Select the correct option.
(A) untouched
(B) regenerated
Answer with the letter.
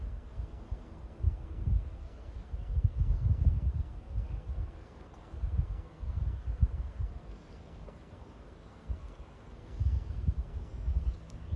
B